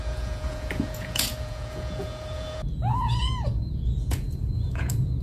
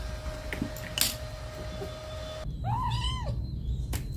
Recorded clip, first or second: second